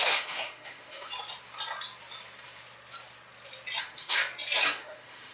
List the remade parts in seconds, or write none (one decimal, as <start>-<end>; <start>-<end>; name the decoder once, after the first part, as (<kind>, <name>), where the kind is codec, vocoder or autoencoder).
0.0-1.1 (autoencoder, DAC-VAE); 3.8-4.2; 4.8-5.3